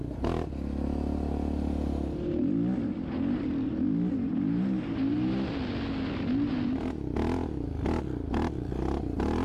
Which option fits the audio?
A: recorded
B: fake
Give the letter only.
A